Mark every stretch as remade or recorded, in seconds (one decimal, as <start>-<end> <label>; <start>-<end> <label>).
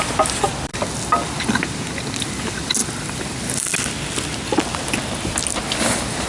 0.0-6.3 recorded